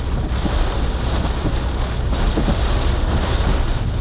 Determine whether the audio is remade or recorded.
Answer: recorded